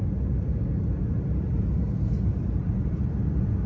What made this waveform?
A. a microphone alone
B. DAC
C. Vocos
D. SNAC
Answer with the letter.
A